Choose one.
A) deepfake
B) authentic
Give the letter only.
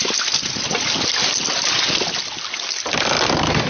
B